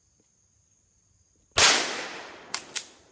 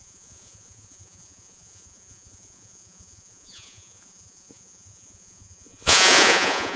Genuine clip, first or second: first